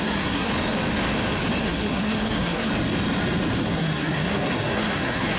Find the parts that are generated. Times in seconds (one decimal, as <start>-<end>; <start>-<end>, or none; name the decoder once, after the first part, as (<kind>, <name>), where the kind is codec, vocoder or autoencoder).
0.0-0.5 (codec, SNAC); 1.6-2.7; 3.6-5.4